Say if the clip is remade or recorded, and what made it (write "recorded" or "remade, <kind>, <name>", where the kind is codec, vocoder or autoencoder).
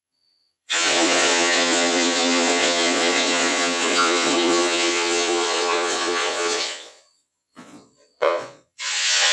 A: remade, vocoder, Vocos